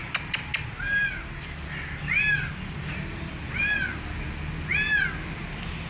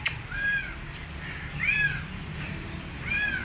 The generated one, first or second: second